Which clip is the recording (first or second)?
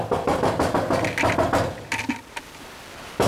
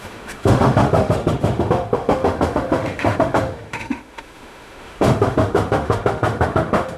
first